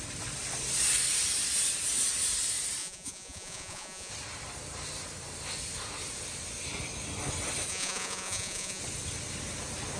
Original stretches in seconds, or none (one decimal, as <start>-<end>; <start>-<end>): 0.0-2.8; 4.1-7.7; 8.8-10.0